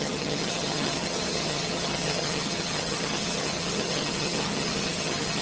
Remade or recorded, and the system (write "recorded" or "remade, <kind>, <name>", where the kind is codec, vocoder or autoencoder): remade, vocoder, HiFi-GAN